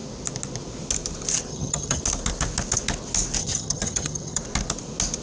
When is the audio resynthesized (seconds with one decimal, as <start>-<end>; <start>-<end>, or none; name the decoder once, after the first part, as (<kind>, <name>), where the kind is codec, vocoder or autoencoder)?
1.5-2.0 (vocoder, HiFi-GAN); 3.4-4.4